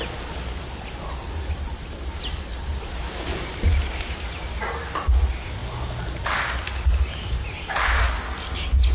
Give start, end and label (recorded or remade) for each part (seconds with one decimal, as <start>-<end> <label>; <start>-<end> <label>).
0.0-8.9 recorded